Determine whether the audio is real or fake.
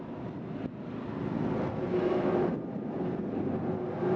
real